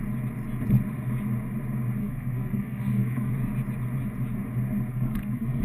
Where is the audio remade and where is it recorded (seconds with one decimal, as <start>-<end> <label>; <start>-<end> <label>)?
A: 0.0-2.0 recorded; 2.0-3.3 remade; 3.3-4.9 recorded; 4.9-5.6 remade